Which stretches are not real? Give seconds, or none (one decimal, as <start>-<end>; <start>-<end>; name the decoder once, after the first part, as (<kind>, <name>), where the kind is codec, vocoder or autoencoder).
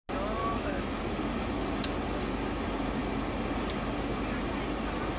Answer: 0.4-1.0 (autoencoder, DAC-VAE)